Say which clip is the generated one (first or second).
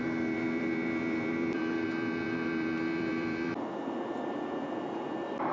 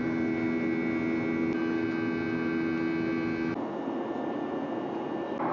first